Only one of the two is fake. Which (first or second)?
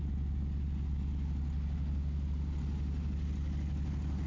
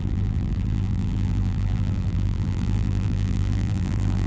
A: second